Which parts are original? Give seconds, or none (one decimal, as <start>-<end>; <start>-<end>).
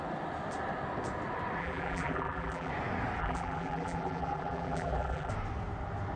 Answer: 0.0-1.6; 2.7-3.2; 5.3-6.2